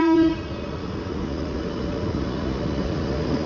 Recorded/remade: remade